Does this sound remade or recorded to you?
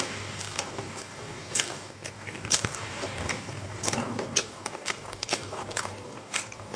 remade